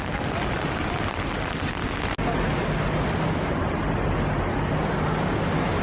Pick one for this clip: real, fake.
real